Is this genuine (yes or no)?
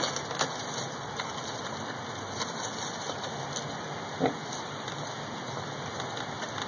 yes